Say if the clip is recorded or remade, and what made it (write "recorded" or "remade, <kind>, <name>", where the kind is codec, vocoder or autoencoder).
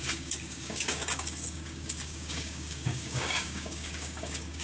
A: remade, codec, DAC